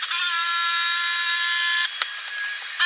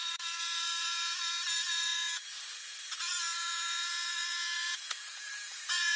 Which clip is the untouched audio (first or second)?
first